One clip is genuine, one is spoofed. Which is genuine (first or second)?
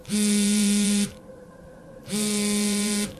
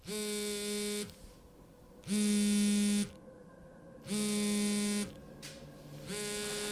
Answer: second